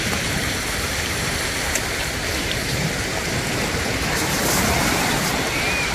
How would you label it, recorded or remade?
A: remade